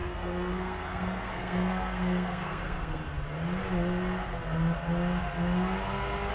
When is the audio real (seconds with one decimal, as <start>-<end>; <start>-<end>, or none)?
3.0-6.3